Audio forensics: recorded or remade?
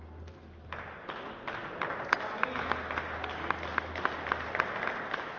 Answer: recorded